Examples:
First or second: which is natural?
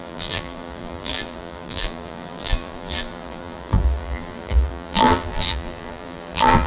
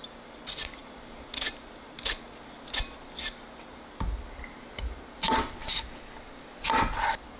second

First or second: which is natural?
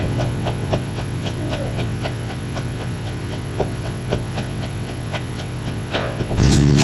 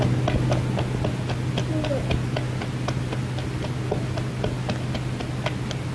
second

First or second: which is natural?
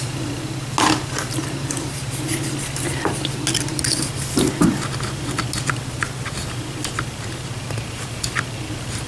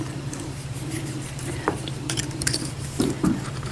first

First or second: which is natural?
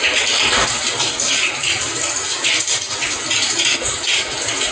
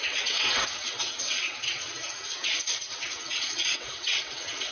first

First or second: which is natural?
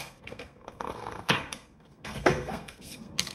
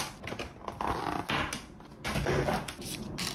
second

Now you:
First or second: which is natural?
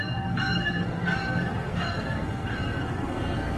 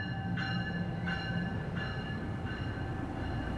second